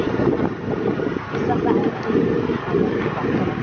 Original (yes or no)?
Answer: yes